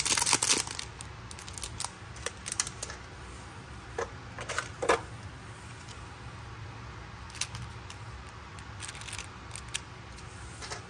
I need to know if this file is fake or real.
real